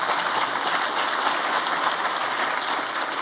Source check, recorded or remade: recorded